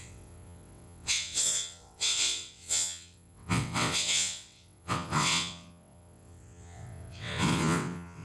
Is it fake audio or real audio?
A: fake